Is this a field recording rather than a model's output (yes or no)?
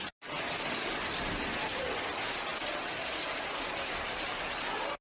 yes